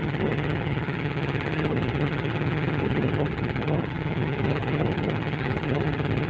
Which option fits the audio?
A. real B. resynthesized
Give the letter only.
B